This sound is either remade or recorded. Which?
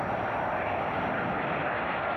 recorded